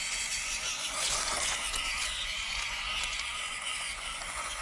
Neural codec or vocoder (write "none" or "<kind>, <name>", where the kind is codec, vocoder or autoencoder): vocoder, Vocos